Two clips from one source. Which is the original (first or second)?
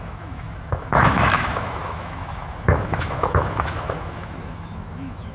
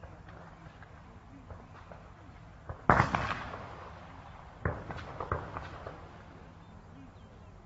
second